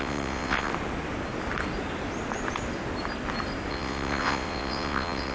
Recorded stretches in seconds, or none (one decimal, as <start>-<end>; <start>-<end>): 0.7-3.7

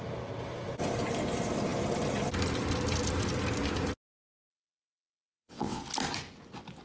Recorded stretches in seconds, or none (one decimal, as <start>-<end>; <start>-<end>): 0.0-4.5; 5.8-6.8

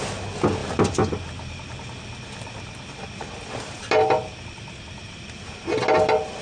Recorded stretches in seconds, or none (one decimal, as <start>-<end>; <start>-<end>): 0.0-6.4

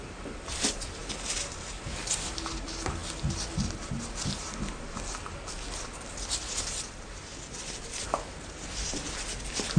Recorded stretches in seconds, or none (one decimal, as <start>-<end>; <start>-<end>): 0.0-9.8